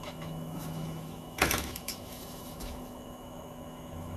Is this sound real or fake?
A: fake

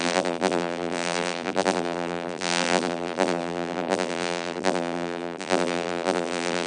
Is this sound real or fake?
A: fake